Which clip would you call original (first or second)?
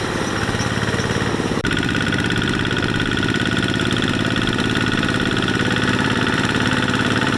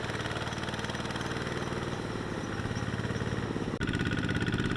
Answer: second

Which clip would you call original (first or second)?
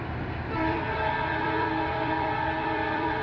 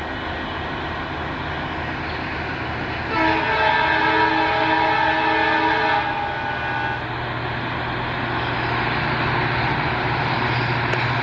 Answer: second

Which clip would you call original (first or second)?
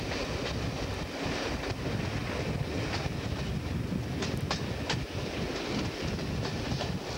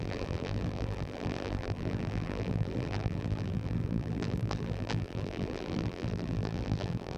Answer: first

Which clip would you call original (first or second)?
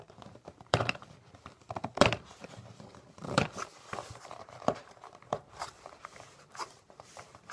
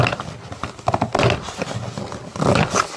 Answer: second